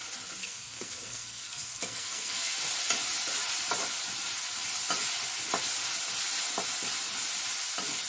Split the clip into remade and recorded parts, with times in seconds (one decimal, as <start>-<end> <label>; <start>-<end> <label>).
0.0-0.4 recorded; 0.4-2.6 remade; 2.6-8.1 recorded